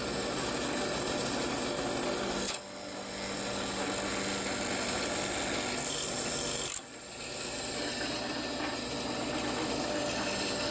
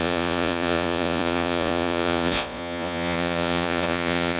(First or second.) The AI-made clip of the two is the second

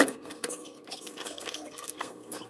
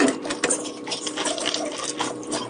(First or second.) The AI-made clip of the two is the first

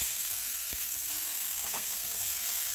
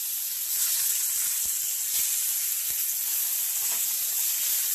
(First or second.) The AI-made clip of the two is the first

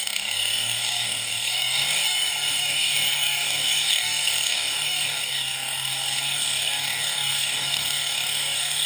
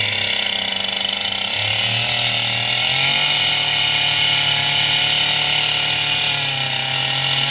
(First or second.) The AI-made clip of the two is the first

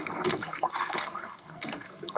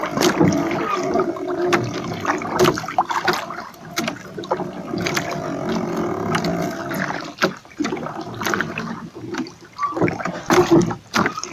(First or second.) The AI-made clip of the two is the first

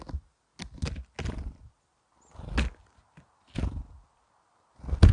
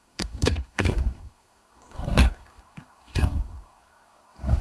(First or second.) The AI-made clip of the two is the second